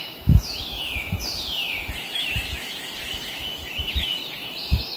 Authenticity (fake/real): fake